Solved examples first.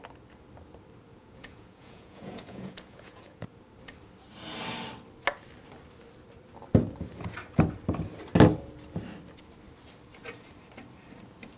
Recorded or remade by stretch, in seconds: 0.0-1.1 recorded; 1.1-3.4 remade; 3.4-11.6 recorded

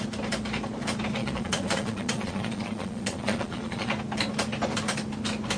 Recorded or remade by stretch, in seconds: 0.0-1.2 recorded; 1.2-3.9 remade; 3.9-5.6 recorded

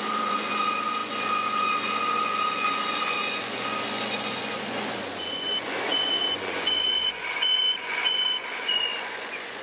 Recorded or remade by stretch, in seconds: 0.0-9.6 remade